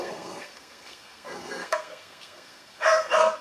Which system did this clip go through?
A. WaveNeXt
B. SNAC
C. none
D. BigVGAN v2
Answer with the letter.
B